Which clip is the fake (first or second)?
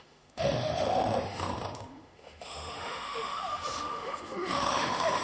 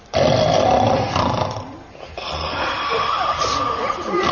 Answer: first